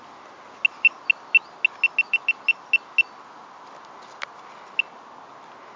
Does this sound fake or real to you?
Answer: real